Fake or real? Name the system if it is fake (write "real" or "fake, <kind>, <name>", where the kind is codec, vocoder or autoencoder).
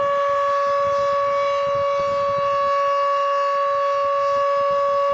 real